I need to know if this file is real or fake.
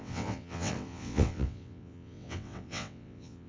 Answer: fake